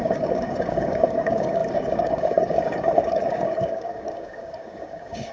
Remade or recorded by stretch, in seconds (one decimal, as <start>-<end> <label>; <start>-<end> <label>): 0.0-5.3 remade